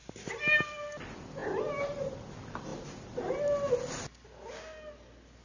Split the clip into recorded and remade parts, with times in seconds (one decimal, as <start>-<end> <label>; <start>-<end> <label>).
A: 0.0-5.4 recorded